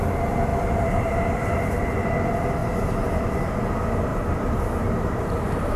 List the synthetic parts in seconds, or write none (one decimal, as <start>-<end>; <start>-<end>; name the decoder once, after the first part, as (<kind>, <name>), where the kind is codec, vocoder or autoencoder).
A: 0.5-1.9 (vocoder, BigVGAN v2); 2.6-3.5; 4.1-5.8